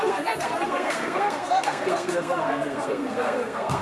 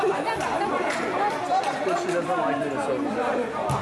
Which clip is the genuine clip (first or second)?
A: second